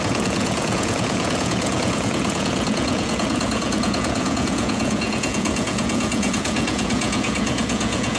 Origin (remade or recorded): remade